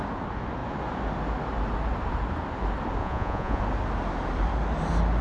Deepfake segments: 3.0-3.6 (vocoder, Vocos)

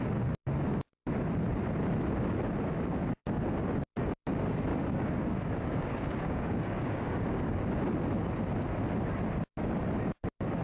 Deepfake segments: 4.7-7.7 (codec, DAC)

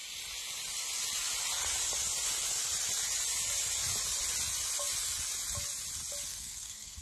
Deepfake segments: 6.3-7.0 (codec, SNAC)